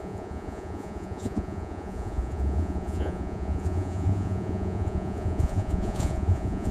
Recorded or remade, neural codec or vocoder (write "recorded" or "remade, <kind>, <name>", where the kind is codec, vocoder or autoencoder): remade, vocoder, Vocos